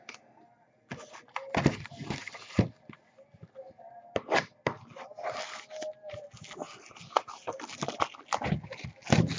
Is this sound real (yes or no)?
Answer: yes